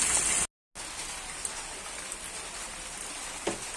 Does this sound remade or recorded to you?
recorded